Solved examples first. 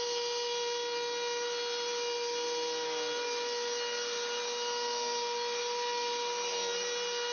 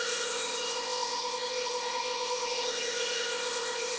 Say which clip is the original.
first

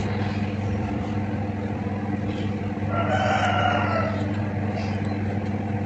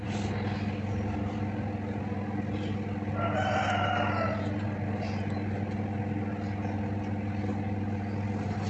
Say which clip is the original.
second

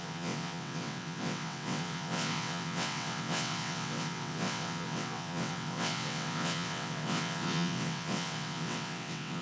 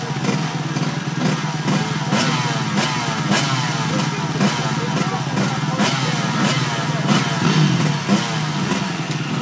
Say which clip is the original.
second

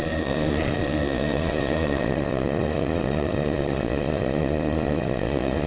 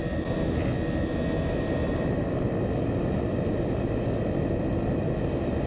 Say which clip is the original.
second